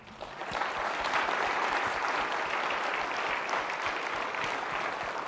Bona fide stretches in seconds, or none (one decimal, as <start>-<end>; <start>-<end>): 0.0-0.4; 2.1-5.3